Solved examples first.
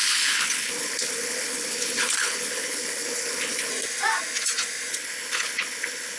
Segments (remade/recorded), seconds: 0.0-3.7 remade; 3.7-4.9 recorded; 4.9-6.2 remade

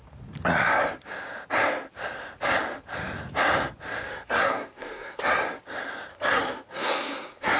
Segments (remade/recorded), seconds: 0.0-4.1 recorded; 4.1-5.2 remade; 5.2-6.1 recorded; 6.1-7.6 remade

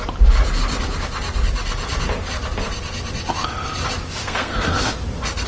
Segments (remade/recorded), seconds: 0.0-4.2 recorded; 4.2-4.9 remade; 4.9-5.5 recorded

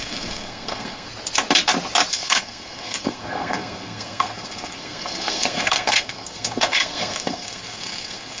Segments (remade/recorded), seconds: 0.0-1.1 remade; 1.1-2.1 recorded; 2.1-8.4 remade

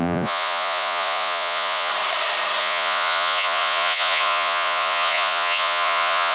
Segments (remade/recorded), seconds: 0.0-1.9 remade; 1.9-2.6 recorded; 2.6-6.3 remade

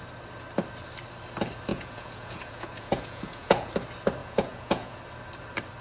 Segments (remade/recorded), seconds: 0.0-1.7 recorded; 1.7-3.7 remade; 3.7-4.2 recorded; 4.2-5.0 remade; 5.0-5.8 recorded